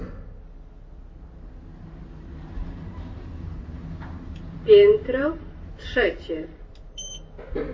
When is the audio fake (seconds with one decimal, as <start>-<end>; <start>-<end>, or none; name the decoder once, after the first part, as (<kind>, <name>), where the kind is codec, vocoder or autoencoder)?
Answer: 2.6-7.2 (vocoder, BigVGAN v2)